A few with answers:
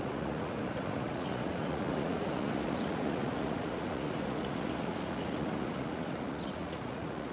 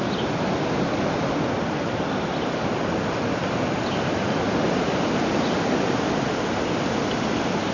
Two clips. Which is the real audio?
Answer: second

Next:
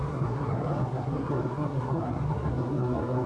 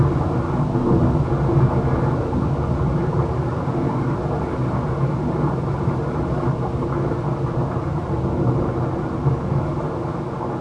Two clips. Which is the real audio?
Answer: second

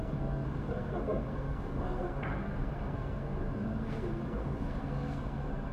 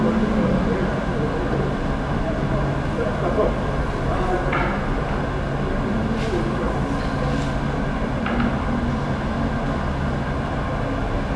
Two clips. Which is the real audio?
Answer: second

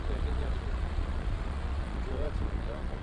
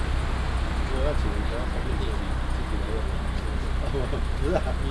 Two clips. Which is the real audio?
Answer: second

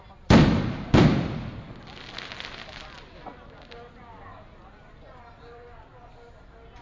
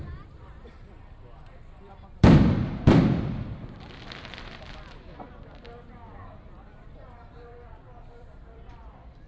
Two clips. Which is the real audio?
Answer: first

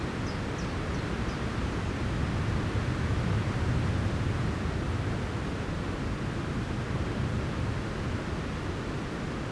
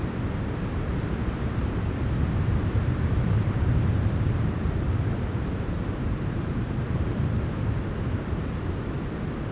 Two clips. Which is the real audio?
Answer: first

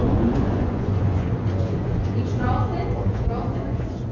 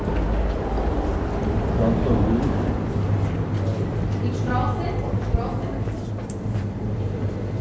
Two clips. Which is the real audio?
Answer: second